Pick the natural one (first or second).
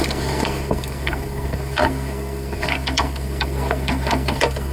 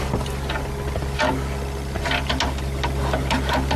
second